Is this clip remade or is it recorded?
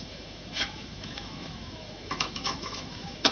remade